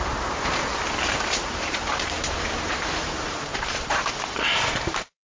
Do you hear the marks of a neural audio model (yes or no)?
yes